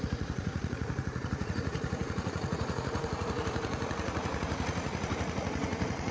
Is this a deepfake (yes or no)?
yes